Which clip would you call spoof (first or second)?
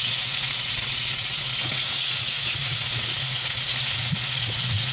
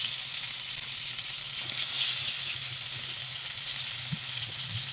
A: first